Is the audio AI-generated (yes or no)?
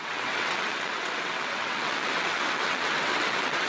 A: yes